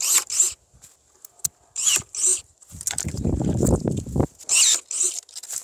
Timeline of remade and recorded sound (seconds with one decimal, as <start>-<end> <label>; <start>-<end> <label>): 0.0-2.3 recorded; 2.3-4.0 remade; 4.0-5.6 recorded